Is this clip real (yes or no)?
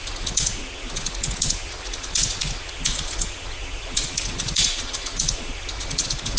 no